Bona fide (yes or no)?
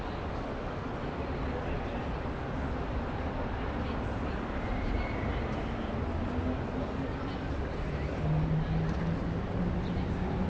yes